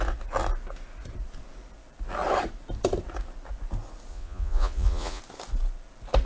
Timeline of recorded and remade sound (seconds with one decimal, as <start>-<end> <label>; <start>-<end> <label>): 0.0-4.1 recorded; 4.1-5.2 remade; 5.2-6.3 recorded